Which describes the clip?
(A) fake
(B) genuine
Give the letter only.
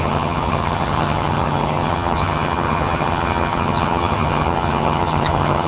A